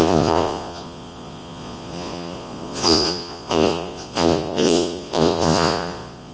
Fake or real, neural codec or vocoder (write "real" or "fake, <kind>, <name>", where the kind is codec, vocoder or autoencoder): fake, vocoder, Vocos